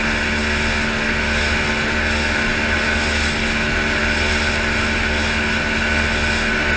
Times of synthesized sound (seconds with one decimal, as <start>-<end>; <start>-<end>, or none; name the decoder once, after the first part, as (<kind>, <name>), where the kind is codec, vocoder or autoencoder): none